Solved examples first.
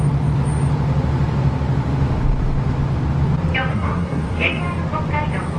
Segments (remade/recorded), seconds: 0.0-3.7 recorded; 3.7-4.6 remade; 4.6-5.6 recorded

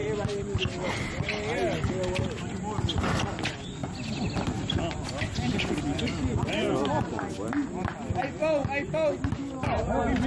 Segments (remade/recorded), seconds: 0.0-10.3 recorded

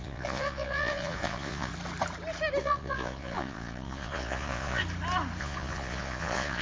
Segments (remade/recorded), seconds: 0.0-1.7 remade; 1.7-2.6 recorded; 2.6-4.8 remade; 4.8-5.4 recorded; 5.4-6.6 remade

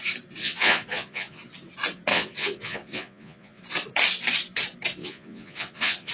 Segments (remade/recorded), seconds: 0.0-0.4 recorded; 0.4-1.4 remade; 1.4-2.1 recorded; 2.1-3.6 remade; 3.6-5.0 recorded; 5.0-6.1 remade

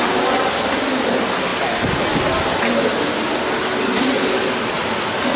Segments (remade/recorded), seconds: 0.0-5.4 recorded

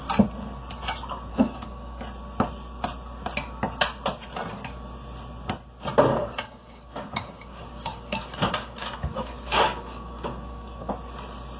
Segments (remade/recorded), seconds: 0.0-1.3 recorded; 1.3-2.0 remade; 2.0-6.1 recorded; 6.1-10.9 remade; 10.9-11.6 recorded

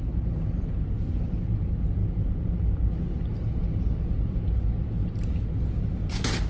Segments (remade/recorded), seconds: 0.0-6.5 recorded

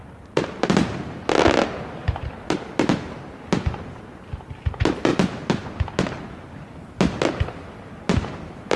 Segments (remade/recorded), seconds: 0.0-8.8 recorded